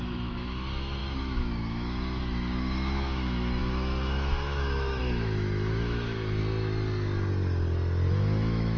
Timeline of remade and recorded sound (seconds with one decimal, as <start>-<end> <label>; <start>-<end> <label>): 0.0-6.4 remade; 6.4-8.1 recorded; 8.1-8.8 remade